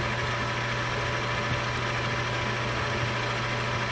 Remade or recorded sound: recorded